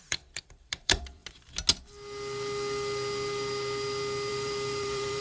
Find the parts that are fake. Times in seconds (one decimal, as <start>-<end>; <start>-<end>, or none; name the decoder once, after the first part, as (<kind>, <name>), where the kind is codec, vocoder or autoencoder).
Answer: 0.0-1.2 (vocoder, BigVGAN v2); 4.3-5.2